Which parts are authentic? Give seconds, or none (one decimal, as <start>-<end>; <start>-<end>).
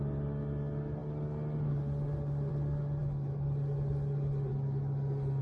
0.0-5.4